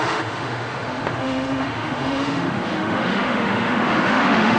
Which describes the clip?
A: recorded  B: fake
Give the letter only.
B